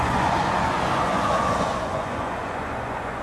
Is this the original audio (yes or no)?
no